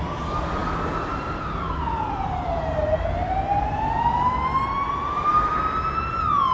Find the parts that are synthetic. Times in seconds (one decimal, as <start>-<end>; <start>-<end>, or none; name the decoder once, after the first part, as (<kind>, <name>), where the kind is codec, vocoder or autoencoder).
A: none